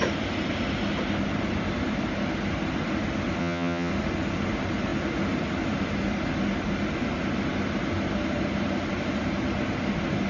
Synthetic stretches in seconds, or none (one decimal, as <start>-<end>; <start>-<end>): 3.4-3.9